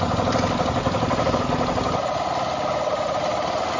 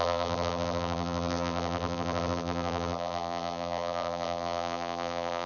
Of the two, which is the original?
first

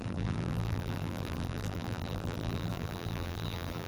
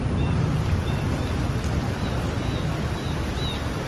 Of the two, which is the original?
second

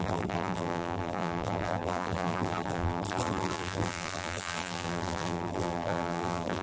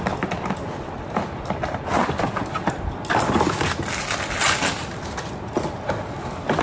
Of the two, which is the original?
second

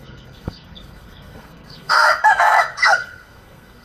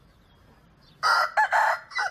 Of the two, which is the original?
second